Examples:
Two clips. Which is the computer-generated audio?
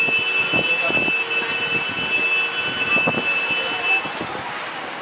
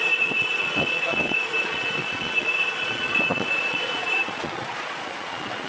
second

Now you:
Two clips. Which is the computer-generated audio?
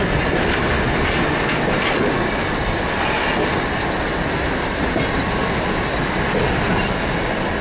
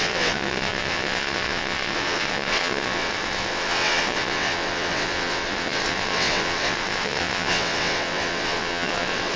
second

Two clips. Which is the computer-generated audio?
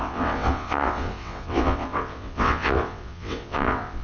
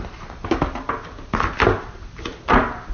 first